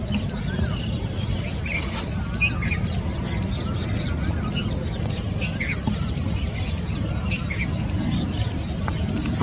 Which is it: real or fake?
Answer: real